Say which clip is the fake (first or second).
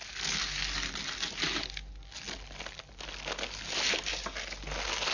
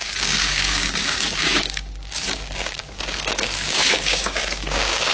second